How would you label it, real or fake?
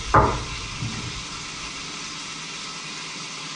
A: real